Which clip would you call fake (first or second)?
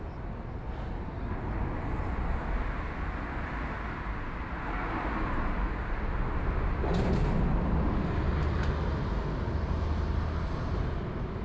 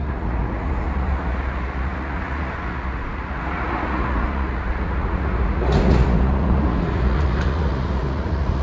second